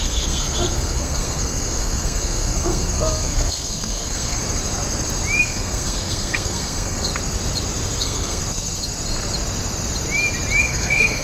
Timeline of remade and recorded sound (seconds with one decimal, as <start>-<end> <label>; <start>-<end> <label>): 0.0-4.4 remade; 4.4-5.4 recorded; 5.4-7.1 remade; 7.1-8.0 recorded; 8.0-8.4 remade; 8.4-10.6 recorded; 10.6-11.2 remade